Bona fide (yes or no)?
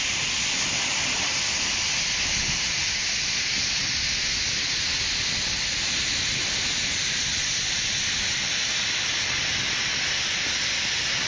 yes